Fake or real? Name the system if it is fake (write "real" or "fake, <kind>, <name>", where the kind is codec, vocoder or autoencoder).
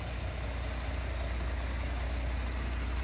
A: real